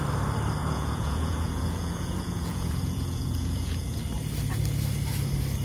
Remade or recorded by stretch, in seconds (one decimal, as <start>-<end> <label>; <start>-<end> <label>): 0.0-0.6 recorded; 0.6-4.0 remade; 4.0-5.6 recorded